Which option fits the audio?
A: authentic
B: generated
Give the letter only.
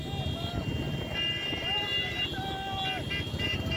A